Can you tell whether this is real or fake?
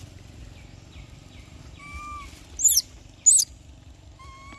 real